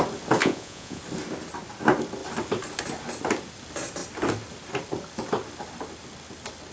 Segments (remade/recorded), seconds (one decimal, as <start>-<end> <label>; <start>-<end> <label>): 0.0-0.4 recorded; 0.4-1.0 remade; 1.0-6.7 recorded